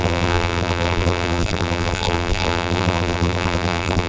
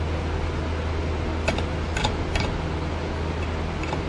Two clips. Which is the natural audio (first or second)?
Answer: second